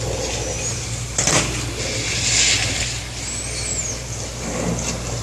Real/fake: real